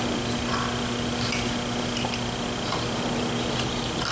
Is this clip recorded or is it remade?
recorded